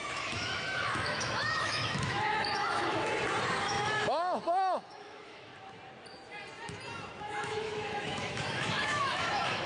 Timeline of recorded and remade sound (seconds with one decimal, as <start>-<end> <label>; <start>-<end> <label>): 0.0-3.1 remade; 3.1-3.6 recorded; 3.6-5.5 remade; 5.5-7.2 recorded; 7.2-9.7 remade

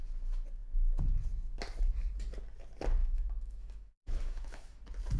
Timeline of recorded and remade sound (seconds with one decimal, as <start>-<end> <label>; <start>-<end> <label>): 0.0-3.0 recorded; 3.0-4.8 remade; 4.8-5.2 recorded

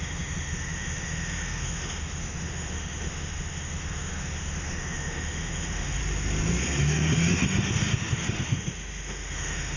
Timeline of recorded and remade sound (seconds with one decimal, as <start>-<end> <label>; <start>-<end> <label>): 0.0-6.0 remade; 6.0-6.8 recorded; 6.8-9.8 remade

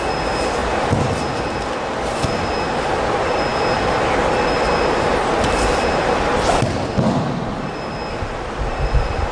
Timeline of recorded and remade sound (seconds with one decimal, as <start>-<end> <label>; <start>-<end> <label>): 0.0-9.3 recorded

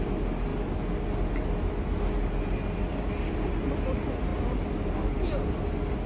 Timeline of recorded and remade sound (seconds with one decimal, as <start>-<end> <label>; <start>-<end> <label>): 0.0-6.1 recorded

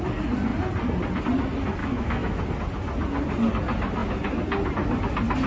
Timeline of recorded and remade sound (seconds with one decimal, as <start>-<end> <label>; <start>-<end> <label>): 0.0-1.8 recorded; 1.8-2.4 remade; 2.4-5.5 recorded

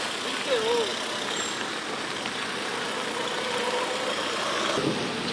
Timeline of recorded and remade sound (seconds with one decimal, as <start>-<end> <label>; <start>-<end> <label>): 0.0-5.3 recorded

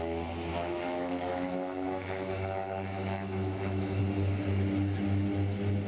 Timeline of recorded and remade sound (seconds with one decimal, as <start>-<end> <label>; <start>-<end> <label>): 0.0-0.5 recorded; 0.5-4.0 remade; 4.0-5.9 recorded